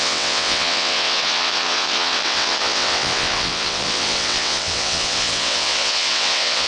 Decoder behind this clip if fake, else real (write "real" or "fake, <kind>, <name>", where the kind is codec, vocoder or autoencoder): fake, vocoder, WaveNeXt